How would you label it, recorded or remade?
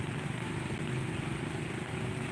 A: recorded